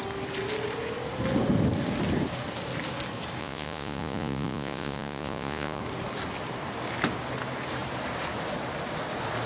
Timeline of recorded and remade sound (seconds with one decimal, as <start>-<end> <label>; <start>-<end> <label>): 0.0-3.4 recorded; 3.4-5.8 remade; 5.8-9.5 recorded

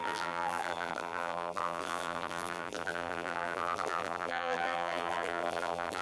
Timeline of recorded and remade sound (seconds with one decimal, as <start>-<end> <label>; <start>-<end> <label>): 0.0-6.0 remade

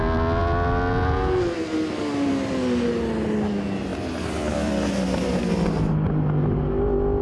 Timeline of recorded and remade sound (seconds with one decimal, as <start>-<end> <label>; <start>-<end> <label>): 0.0-3.9 recorded; 3.9-5.4 remade; 5.4-7.2 recorded

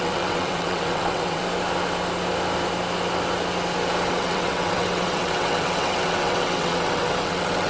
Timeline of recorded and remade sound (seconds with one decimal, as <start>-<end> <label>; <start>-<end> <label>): 0.0-1.4 remade; 1.4-4.1 recorded; 4.1-7.7 remade

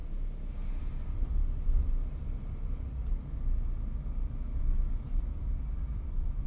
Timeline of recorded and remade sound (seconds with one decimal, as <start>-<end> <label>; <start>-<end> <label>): 0.0-0.8 recorded; 0.8-1.4 remade; 1.4-4.6 recorded; 4.6-6.5 remade

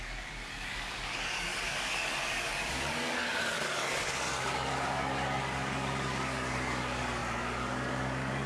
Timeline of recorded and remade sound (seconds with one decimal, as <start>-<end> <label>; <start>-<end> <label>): 0.0-8.5 remade